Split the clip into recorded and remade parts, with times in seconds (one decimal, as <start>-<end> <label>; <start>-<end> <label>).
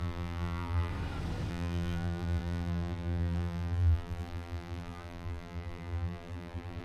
0.0-0.9 remade; 0.9-1.5 recorded; 1.5-6.8 remade